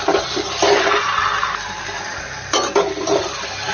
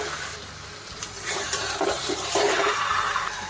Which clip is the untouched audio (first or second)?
first